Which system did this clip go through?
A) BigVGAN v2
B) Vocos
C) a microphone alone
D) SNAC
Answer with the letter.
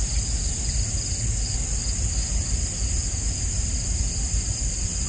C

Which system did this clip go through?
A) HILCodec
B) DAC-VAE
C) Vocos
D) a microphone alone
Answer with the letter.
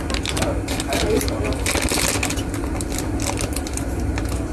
D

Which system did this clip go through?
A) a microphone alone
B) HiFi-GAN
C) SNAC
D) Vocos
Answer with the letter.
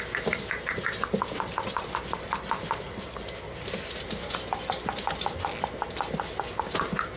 A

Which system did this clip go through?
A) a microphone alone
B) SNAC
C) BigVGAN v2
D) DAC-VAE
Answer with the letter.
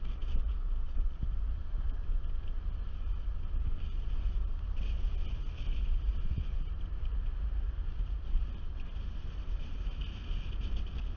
A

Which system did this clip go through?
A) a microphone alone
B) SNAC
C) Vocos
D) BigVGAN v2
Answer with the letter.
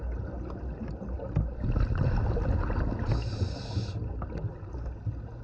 A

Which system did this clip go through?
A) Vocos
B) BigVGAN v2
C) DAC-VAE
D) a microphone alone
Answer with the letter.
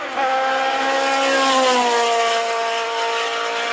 D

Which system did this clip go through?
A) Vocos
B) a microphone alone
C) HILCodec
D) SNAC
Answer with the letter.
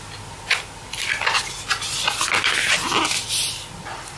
B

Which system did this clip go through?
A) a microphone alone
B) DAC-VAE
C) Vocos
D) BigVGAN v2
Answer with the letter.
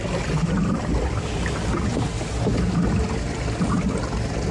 A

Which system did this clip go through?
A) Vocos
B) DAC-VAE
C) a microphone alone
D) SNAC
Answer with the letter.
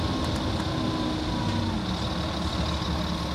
C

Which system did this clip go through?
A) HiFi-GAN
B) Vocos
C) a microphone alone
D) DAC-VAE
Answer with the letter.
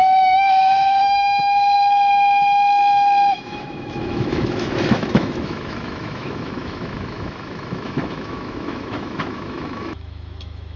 D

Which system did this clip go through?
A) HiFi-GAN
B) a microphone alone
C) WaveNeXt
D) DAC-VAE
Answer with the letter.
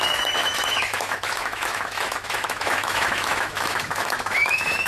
D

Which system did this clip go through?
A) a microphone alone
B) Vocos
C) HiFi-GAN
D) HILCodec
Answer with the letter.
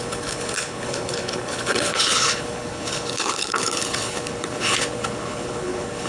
D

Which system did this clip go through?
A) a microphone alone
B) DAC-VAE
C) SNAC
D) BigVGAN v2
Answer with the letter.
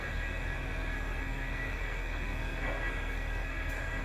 C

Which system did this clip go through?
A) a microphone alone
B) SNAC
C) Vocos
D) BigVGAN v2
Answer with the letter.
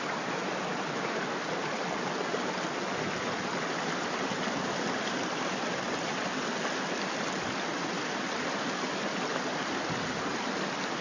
A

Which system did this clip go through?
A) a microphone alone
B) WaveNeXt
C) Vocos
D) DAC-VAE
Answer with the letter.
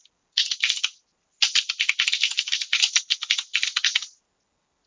A